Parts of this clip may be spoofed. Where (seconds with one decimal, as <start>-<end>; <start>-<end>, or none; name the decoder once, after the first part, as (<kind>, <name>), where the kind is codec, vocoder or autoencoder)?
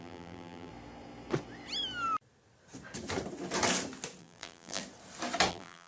0.0-0.7 (vocoder, BigVGAN v2); 4.2-4.8; 5.5-5.9